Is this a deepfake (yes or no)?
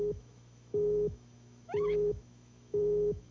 yes